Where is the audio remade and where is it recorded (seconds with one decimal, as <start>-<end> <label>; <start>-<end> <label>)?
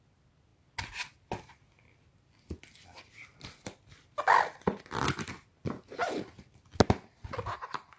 0.0-8.0 recorded